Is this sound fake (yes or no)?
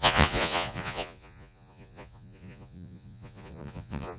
yes